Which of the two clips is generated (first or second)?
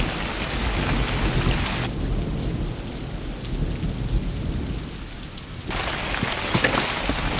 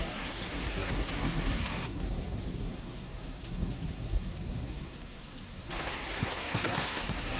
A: second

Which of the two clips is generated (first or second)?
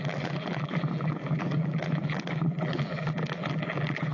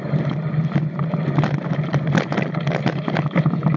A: first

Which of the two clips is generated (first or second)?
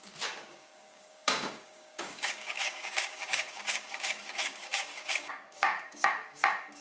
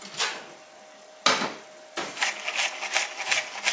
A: first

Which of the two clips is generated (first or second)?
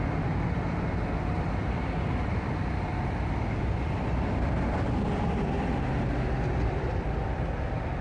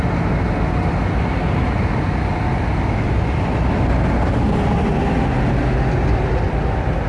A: first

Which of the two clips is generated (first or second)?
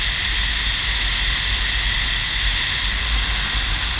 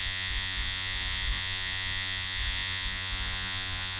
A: second